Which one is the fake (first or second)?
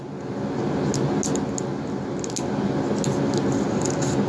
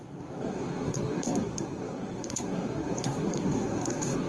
second